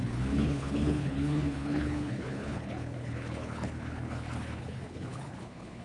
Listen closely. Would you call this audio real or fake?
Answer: fake